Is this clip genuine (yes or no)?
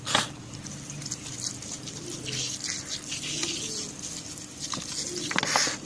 yes